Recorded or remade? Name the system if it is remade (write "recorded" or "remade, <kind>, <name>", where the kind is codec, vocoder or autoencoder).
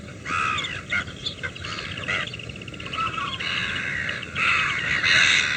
remade, vocoder, BigVGAN v2